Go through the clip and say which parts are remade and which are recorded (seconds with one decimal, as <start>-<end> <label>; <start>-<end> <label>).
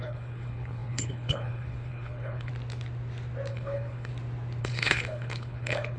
0.0-2.5 remade; 2.5-3.5 recorded; 3.5-4.1 remade; 4.1-4.6 recorded; 4.6-6.0 remade